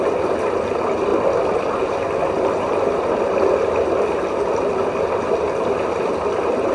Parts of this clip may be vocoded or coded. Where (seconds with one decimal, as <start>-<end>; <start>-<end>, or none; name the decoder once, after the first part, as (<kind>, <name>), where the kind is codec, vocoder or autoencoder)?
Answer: none